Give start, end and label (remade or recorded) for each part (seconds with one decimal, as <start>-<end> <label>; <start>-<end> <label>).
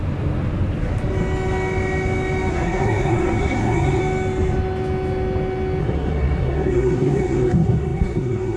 0.0-2.5 recorded; 2.5-4.0 remade; 4.0-5.8 recorded; 5.8-8.6 remade